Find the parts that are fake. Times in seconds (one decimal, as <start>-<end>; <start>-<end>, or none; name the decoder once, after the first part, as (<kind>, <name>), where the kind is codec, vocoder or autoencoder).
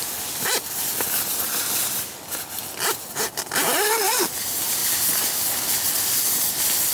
4.8-5.7 (vocoder, BigVGAN v2)